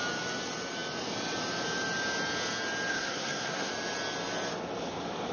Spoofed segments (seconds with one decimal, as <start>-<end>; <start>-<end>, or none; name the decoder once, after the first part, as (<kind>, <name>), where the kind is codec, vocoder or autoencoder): 2.9-3.7 (codec, SNAC)